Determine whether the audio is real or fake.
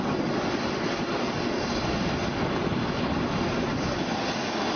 real